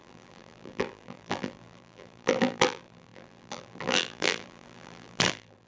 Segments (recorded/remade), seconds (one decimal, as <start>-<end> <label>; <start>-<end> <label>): 0.0-5.7 remade